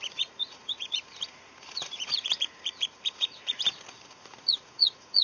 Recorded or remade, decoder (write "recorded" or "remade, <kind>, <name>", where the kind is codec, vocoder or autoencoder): remade, vocoder, Vocos